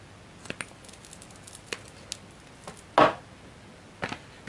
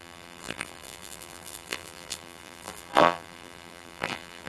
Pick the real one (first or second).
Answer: first